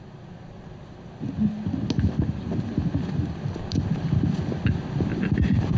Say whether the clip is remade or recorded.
recorded